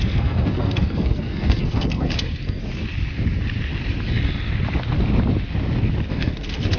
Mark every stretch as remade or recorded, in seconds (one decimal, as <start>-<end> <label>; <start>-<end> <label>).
0.0-2.6 remade; 2.6-6.1 recorded; 6.1-6.8 remade